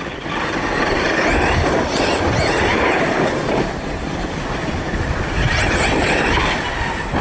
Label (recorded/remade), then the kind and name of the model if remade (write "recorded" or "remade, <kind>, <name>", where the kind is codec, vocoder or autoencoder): recorded